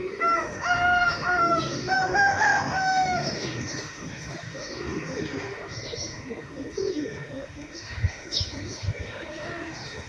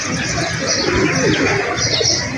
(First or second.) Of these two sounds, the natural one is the second